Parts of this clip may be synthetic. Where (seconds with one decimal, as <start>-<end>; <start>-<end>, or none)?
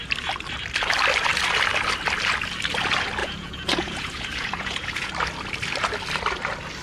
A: 3.2-5.1